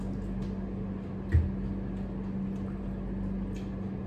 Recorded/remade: recorded